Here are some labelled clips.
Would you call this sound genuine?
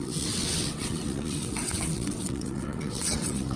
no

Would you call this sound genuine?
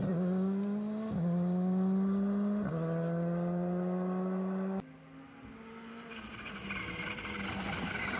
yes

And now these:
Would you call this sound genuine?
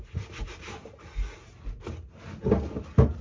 yes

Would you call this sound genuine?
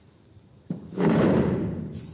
no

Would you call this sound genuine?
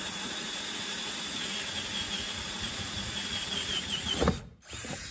no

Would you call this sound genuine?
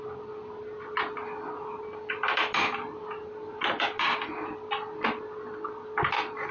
yes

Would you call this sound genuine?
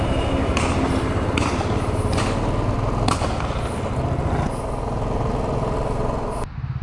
yes